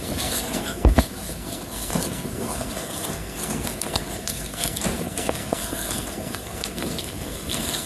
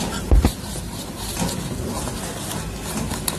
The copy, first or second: first